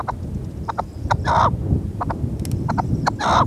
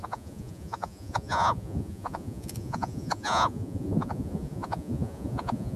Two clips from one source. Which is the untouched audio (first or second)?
first